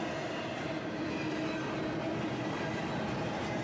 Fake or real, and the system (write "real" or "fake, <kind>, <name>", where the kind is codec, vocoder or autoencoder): real